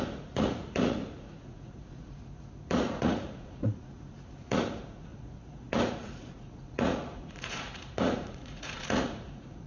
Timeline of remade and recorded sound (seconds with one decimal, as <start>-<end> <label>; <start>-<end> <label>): 0.0-9.7 remade